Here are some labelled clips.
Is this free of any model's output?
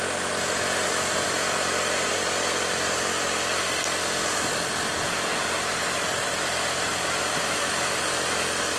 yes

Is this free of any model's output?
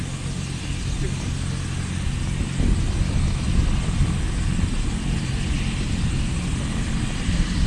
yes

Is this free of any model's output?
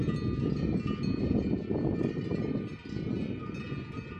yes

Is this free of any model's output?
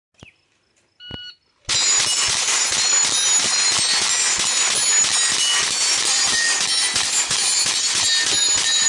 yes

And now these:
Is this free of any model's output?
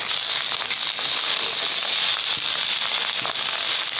yes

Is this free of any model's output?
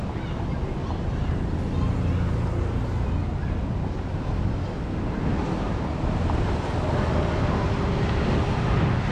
yes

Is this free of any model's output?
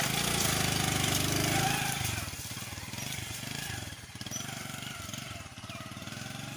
no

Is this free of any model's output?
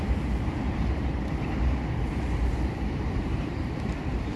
no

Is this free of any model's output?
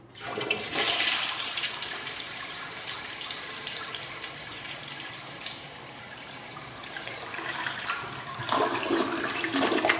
no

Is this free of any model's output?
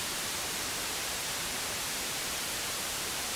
no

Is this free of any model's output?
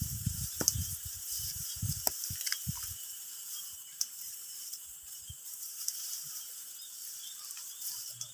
no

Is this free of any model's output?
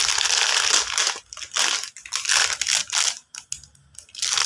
yes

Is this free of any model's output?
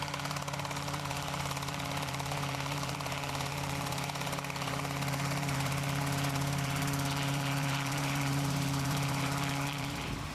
no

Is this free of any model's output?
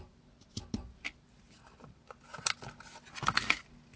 yes